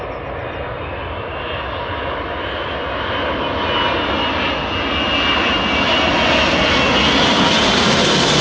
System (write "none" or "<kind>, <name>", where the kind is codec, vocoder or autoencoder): none